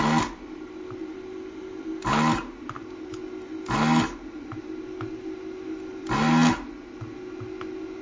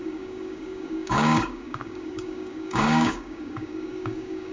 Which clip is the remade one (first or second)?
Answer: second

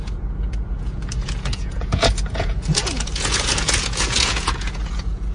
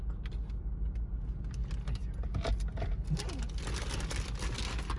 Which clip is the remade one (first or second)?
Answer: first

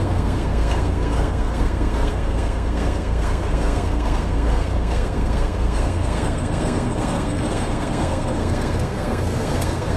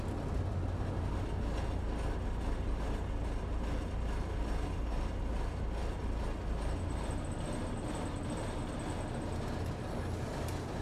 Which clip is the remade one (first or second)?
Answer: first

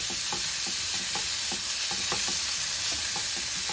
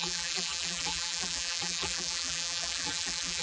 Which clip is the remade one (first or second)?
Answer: second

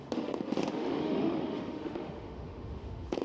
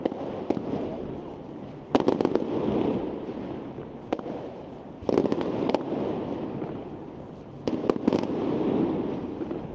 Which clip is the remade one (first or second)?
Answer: first